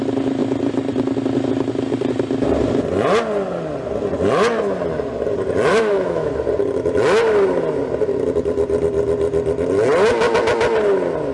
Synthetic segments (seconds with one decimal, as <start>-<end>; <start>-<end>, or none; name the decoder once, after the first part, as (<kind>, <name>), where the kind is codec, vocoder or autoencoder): 5.7-6.3 (autoencoder, DAC-VAE)